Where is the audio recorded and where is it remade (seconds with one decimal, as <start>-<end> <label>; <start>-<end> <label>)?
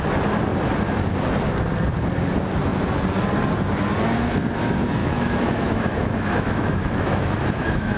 0.0-5.0 recorded; 5.0-8.0 remade